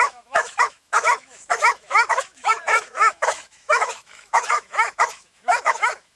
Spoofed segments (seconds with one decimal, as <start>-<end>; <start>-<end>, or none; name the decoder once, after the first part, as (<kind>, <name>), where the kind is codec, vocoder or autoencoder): 0.0-6.2 (autoencoder, DAC-VAE)